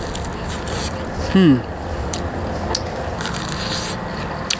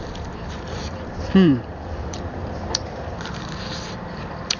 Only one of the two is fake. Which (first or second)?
second